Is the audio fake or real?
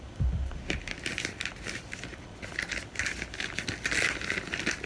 real